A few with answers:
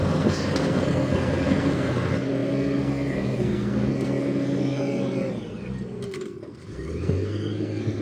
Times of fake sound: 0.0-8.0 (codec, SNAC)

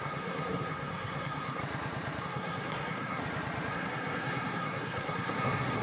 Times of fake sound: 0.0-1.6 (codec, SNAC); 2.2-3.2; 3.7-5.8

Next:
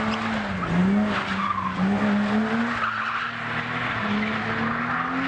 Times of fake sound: none

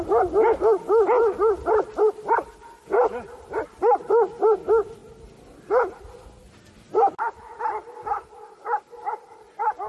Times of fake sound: none

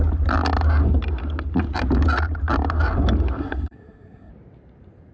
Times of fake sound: 3.4-4.3 (codec, SNAC)